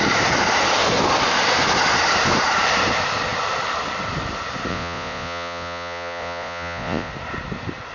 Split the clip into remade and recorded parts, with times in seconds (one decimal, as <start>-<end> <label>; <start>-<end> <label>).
0.0-4.7 recorded; 4.7-7.1 remade; 7.1-7.9 recorded